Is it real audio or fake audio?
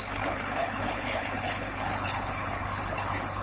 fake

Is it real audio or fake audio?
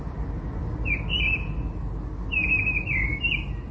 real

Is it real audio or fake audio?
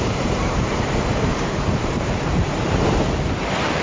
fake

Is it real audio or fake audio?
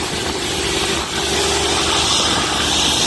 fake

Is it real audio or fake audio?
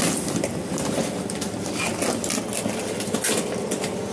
real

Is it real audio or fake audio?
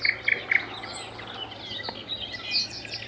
real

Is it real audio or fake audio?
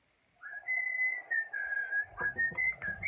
real